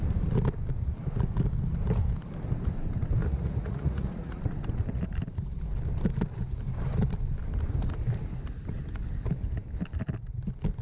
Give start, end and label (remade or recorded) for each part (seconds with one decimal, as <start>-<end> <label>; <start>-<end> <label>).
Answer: 0.0-3.2 recorded; 3.2-4.4 remade; 4.4-10.8 recorded